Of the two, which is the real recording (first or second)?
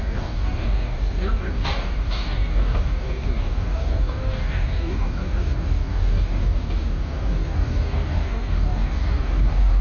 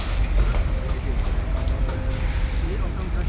second